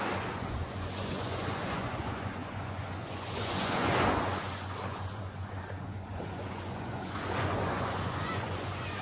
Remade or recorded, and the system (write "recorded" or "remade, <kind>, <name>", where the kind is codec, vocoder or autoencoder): remade, vocoder, Vocos